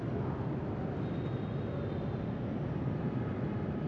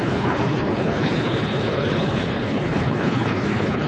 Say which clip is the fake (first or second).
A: second